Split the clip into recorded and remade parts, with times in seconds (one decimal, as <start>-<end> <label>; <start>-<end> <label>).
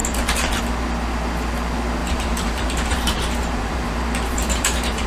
0.0-2.0 recorded; 2.0-5.1 remade